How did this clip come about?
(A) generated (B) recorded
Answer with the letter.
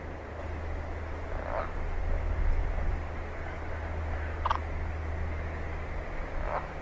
B